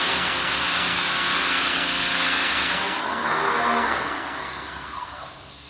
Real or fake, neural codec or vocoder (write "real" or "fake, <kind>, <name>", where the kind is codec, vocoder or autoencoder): fake, codec, SNAC